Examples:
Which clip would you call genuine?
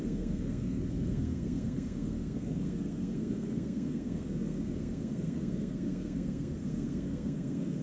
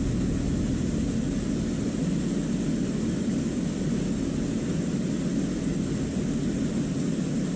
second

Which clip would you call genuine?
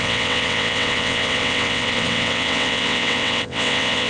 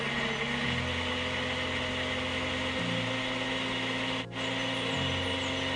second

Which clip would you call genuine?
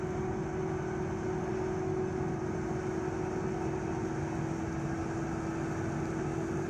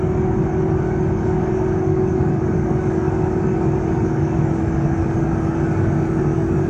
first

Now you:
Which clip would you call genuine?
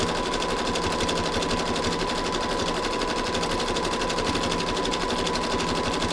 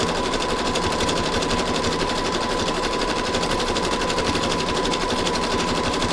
first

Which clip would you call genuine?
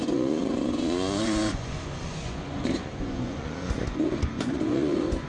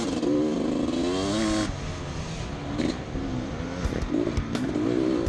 second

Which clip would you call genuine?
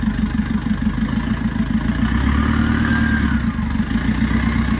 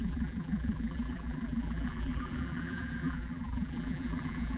first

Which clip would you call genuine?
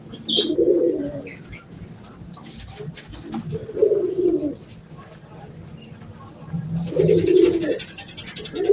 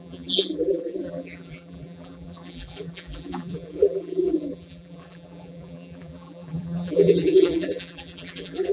first